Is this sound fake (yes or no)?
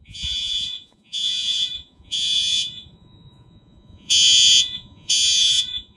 yes